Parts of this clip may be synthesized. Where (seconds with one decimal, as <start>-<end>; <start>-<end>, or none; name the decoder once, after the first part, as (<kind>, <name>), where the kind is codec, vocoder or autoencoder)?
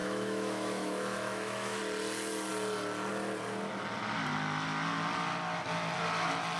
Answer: 0.0-1.8 (autoencoder, DAC-VAE)